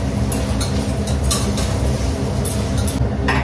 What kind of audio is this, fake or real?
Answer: real